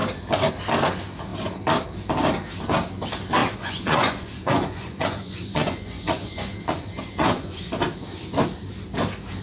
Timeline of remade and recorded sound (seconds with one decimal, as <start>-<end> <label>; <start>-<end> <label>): 0.0-3.4 recorded; 3.4-7.7 remade; 7.7-9.4 recorded

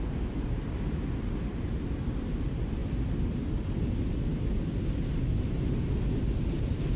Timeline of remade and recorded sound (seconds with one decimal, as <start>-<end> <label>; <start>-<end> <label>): 0.0-7.0 recorded

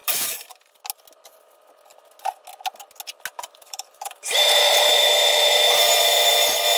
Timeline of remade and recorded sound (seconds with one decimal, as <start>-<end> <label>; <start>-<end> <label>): 0.0-0.8 remade; 0.8-3.3 recorded; 3.3-6.8 remade